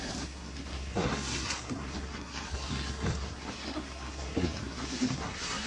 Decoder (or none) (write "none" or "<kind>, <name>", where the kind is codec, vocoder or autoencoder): codec, SNAC